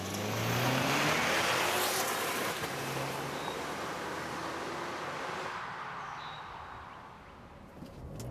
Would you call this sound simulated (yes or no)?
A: no